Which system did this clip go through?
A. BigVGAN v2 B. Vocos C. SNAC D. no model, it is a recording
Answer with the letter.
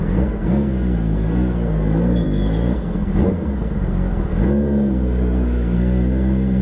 C